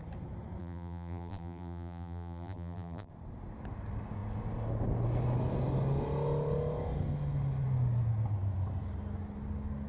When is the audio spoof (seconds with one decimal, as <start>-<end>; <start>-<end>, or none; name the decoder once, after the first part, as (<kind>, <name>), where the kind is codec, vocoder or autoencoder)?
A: 0.6-3.1 (vocoder, BigVGAN v2)